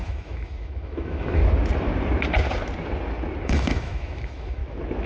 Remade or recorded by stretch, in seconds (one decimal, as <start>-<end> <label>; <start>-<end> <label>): 0.0-1.4 remade; 1.4-3.4 recorded; 3.4-4.6 remade; 4.6-5.1 recorded